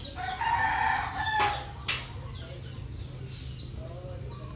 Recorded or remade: recorded